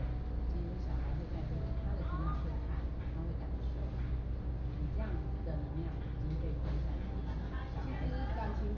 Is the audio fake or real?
real